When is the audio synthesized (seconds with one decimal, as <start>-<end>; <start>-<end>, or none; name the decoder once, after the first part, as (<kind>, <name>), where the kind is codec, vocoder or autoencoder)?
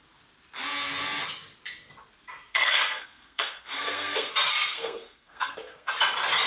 2.5-4.3 (codec, SNAC); 4.7-5.9